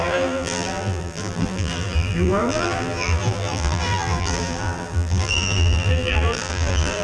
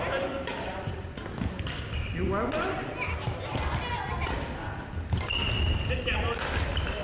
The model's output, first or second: first